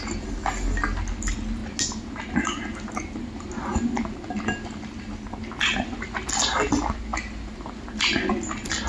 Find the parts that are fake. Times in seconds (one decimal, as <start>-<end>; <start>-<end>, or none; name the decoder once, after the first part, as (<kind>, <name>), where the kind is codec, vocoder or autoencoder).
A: none